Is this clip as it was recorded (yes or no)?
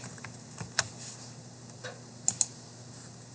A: yes